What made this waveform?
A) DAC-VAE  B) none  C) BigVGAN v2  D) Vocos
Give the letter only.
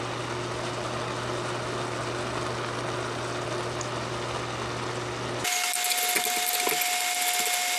B